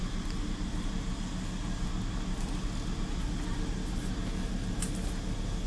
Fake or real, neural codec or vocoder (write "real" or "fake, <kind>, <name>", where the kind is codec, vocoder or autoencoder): real